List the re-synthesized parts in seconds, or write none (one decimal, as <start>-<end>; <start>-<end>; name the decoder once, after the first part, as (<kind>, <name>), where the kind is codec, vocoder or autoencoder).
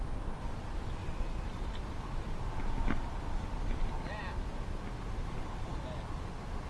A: none